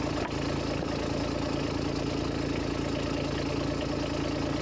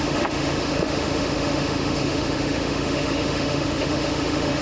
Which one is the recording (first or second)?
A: first